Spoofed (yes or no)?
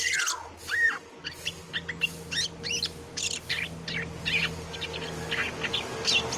no